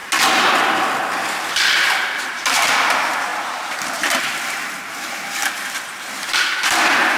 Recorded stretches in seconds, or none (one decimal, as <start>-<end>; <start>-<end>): 0.0-2.0